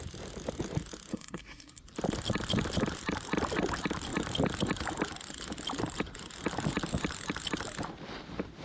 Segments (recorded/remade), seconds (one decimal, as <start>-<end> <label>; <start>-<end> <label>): 0.0-1.1 recorded; 1.1-1.8 remade; 1.8-8.6 recorded